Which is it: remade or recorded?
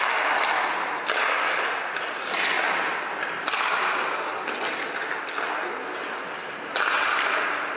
recorded